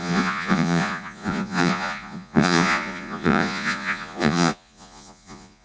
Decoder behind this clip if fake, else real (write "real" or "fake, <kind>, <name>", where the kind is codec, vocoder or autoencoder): fake, vocoder, Vocos